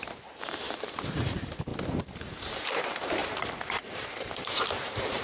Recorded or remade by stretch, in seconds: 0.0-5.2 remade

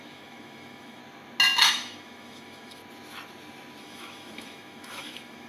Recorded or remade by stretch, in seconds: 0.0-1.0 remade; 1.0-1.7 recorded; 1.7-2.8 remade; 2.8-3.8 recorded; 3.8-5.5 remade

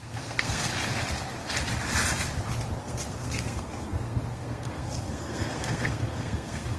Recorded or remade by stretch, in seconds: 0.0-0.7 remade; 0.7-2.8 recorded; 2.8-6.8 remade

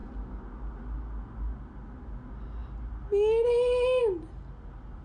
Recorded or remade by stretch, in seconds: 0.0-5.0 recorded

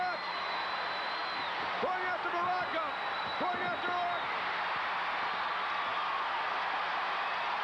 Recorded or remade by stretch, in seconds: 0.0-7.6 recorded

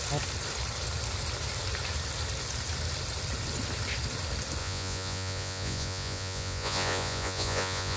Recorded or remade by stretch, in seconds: 0.0-4.6 recorded; 4.6-8.0 remade